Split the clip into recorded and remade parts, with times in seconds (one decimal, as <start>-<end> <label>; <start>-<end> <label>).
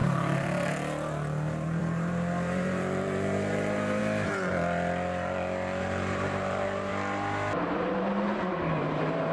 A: 0.0-4.0 remade; 4.0-5.8 recorded; 5.8-6.9 remade; 6.9-7.6 recorded; 7.6-9.3 remade